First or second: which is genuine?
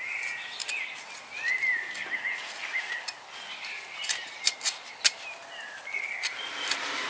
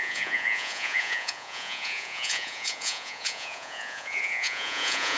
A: first